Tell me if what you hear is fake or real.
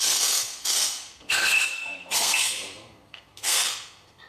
fake